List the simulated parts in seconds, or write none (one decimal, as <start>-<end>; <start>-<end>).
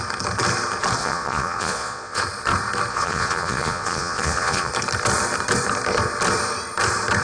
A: 1.0-2.2; 2.9-4.7